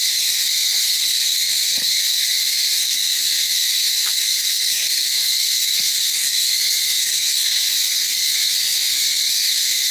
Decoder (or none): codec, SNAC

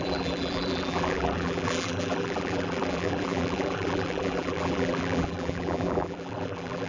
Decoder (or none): vocoder, BigVGAN v2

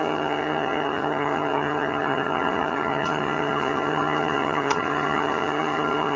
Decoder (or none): vocoder, HiFi-GAN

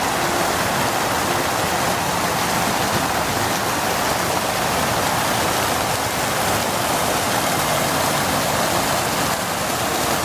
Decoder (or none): none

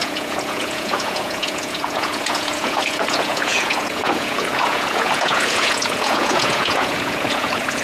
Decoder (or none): vocoder, Vocos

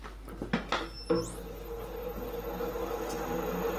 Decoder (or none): none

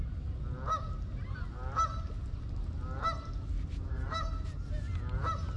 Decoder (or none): none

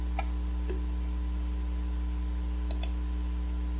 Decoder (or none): none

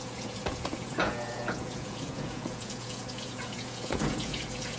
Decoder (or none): vocoder, Vocos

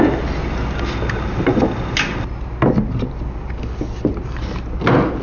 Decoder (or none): none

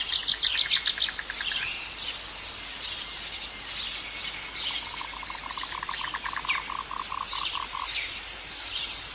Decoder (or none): none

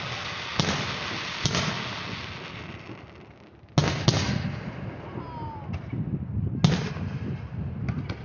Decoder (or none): none